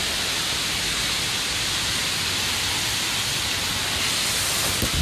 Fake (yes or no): no